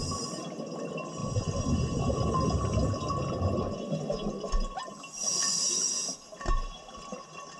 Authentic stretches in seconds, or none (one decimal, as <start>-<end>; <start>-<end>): 0.0-7.6